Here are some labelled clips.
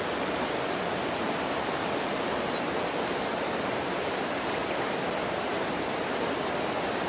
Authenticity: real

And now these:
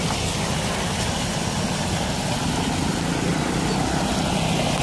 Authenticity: real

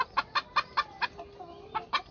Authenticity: real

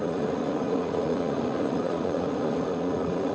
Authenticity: fake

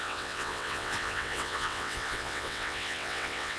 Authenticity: fake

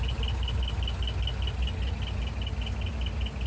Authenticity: real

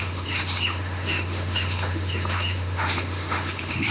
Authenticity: fake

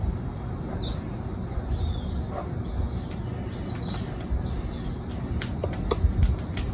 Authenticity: real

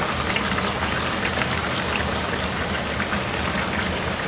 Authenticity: real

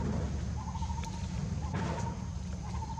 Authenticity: real